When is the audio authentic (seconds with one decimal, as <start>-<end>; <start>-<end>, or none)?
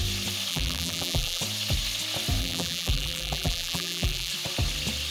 0.0-0.5; 1.4-2.4; 4.3-5.1